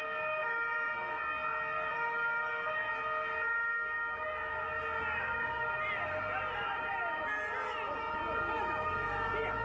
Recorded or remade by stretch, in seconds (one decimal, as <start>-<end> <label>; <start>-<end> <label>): 0.0-9.6 recorded